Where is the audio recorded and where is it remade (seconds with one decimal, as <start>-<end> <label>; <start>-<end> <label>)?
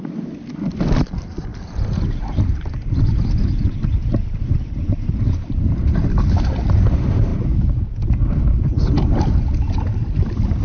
0.0-7.3 remade; 7.3-10.2 recorded; 10.2-10.6 remade